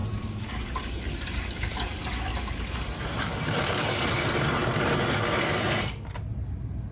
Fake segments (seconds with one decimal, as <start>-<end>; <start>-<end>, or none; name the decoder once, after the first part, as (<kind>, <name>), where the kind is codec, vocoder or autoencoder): 0.0-4.1 (vocoder, BigVGAN v2)

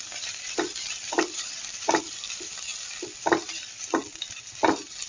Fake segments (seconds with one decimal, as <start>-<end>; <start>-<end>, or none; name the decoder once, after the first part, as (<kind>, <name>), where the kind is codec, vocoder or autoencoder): 0.0-2.7 (vocoder, BigVGAN v2); 3.4-4.0

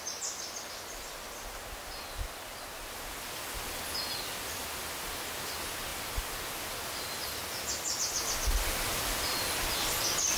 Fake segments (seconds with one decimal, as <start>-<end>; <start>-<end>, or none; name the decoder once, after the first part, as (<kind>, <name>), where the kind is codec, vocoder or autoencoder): 8.9-10.0 (vocoder, BigVGAN v2)

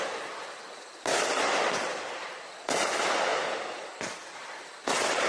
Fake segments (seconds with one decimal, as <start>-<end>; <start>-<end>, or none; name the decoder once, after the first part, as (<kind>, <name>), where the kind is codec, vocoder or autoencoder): 0.4-2.3 (vocoder, BigVGAN v2); 3.3-4.3

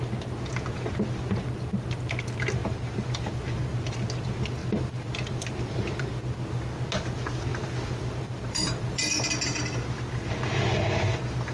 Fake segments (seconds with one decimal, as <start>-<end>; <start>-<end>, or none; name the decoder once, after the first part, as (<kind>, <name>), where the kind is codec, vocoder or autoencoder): 2.6-3.4 (vocoder, BigVGAN v2); 4.6-6.2; 7.5-9.1